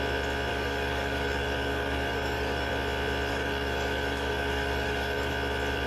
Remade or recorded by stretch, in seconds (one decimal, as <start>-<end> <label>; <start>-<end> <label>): 0.0-0.5 recorded; 0.5-2.7 remade; 2.7-3.3 recorded; 3.3-5.3 remade; 5.3-5.9 recorded